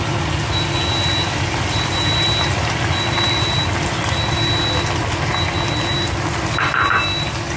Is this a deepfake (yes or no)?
no